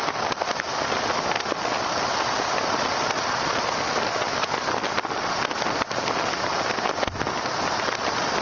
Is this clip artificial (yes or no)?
no